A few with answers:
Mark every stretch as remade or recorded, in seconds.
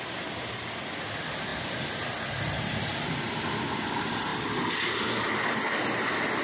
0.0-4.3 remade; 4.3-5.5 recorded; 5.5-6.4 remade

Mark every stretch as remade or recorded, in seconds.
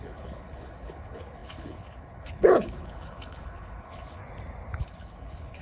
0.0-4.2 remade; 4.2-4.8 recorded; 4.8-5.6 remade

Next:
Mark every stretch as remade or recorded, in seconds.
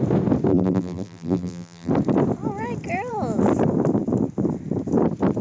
0.0-0.5 recorded; 0.5-1.9 remade; 1.9-5.4 recorded